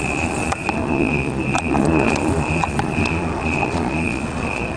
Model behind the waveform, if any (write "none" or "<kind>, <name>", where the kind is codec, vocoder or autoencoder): vocoder, Vocos